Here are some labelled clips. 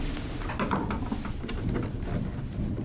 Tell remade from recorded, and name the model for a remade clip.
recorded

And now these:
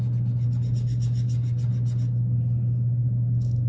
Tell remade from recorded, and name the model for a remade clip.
recorded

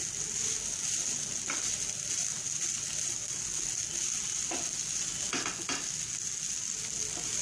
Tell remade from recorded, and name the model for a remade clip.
recorded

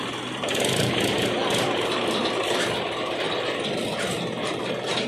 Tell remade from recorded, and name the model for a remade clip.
remade, vocoder, BigVGAN v2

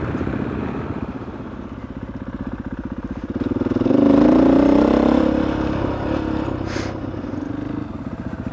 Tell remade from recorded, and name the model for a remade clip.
recorded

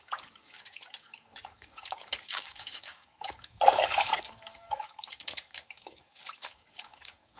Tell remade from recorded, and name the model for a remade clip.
remade, codec, DAC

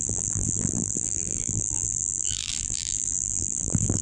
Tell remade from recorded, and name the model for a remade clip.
remade, vocoder, BigVGAN v2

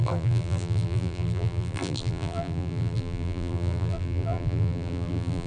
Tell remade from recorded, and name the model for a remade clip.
remade, vocoder, BigVGAN v2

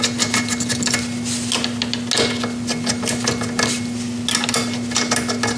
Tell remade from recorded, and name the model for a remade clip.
recorded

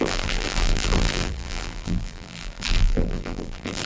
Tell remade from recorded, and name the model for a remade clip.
remade, vocoder, BigVGAN v2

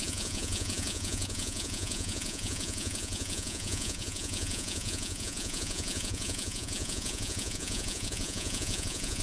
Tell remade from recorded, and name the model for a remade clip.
remade, vocoder, Vocos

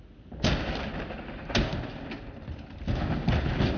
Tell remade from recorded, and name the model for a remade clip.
recorded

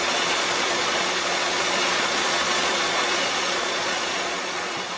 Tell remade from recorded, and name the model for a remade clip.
remade, vocoder, Vocos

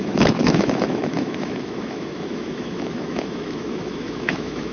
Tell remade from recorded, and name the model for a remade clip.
remade, autoencoder, DAC-VAE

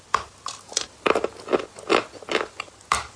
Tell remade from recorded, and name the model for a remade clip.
recorded